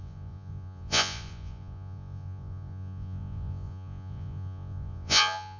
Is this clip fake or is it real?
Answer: fake